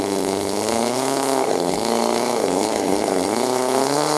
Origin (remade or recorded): remade